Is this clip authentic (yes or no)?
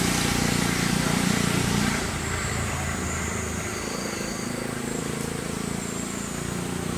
yes